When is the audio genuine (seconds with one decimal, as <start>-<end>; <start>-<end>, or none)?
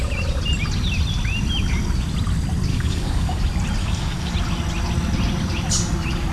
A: 0.0-2.7; 3.4-3.8; 4.3-6.3